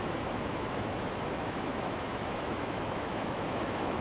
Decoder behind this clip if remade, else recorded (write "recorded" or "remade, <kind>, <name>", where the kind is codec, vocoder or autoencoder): remade, autoencoder, DAC-VAE